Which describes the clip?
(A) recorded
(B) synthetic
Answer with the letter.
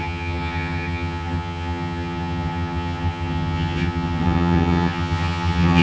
B